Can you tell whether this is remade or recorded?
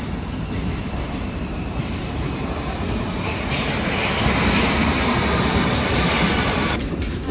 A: remade